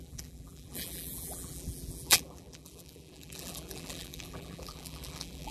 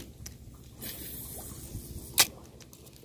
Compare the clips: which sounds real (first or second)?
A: second